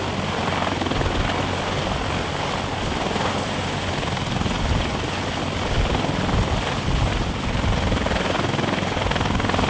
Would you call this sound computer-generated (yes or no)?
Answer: no